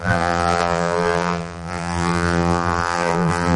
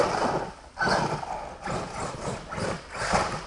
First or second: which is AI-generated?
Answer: first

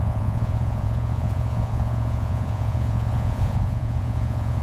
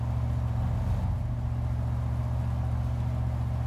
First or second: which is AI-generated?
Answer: first